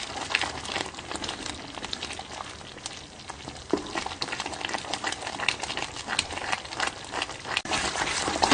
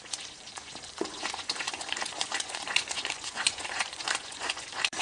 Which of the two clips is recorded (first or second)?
first